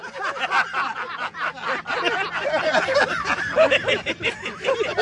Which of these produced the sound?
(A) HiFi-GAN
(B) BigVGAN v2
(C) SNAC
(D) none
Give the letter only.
D